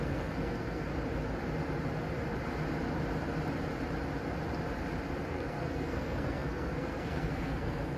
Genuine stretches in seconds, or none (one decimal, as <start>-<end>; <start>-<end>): 0.9-5.3